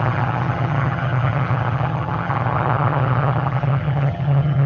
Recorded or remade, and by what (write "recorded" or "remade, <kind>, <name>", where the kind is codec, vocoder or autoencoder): remade, vocoder, HiFi-GAN